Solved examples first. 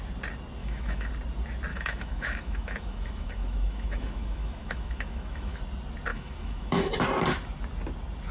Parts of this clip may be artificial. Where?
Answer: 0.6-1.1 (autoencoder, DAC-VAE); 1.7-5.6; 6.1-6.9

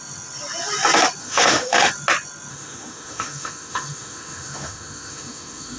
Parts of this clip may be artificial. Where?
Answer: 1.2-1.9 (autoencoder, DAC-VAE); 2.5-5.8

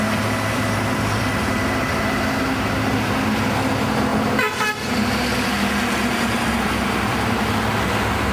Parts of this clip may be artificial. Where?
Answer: none

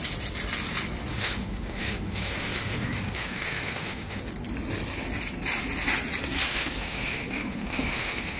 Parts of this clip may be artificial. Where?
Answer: 1.1-4.2 (autoencoder, DAC-VAE); 6.5-8.4

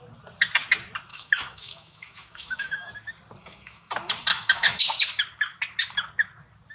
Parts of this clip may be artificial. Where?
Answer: 1.1-2.9 (autoencoder, DAC-VAE); 3.4-3.9; 4.3-4.8

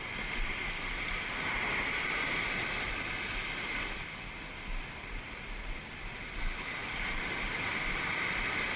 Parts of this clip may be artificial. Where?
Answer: none

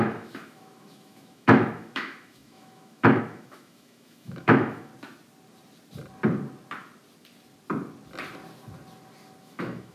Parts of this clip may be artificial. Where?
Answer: 0.0-4.9 (autoencoder, DAC-VAE); 9.4-9.9

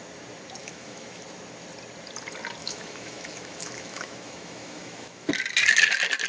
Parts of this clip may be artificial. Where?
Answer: 0.6-1.2 (autoencoder, DAC-VAE); 2.6-5.3